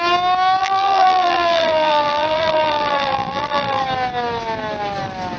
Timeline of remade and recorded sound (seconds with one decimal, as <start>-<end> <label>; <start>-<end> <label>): 0.0-0.6 recorded; 0.6-3.8 remade; 3.8-5.4 recorded